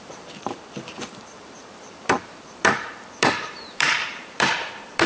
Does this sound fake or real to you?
fake